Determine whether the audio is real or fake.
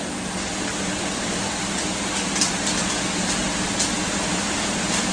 real